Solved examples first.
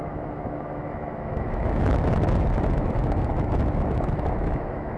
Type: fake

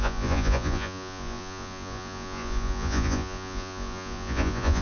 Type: fake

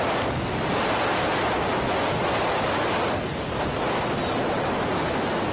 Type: real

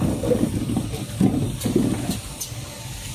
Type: real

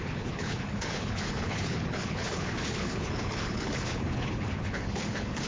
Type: fake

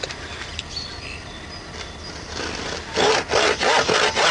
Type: fake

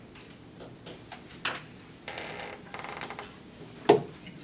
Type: real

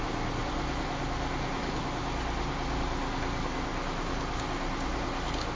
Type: real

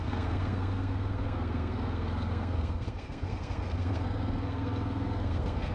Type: fake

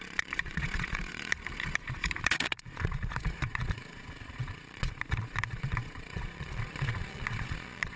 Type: fake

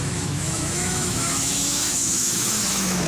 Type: fake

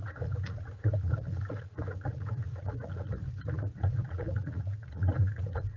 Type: fake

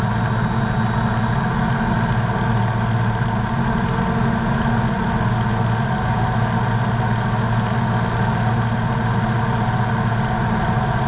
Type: real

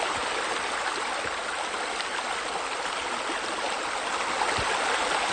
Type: real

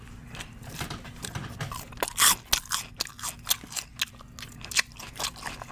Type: real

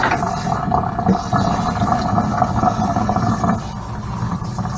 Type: real